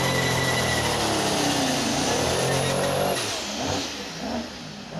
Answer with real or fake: real